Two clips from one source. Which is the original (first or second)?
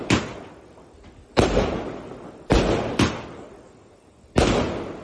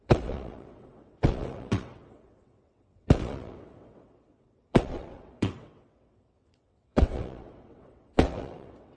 first